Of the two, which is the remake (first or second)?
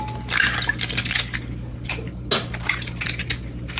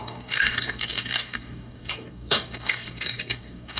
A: second